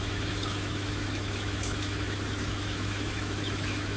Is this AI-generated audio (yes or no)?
yes